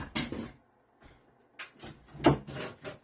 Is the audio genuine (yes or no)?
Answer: yes